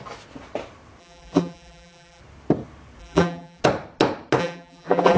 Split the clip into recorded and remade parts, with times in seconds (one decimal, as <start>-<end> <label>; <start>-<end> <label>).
0.0-1.0 recorded; 1.0-2.2 remade; 2.2-3.0 recorded; 3.0-3.6 remade; 3.6-4.4 recorded; 4.4-5.2 remade